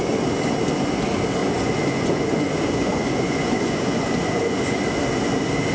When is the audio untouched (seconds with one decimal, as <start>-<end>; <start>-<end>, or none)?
0.0-1.4; 4.8-5.7